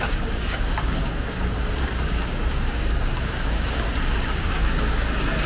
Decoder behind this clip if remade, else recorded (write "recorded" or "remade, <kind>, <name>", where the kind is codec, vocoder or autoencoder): remade, codec, DAC